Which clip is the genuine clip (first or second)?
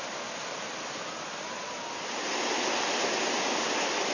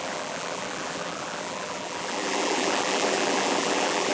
first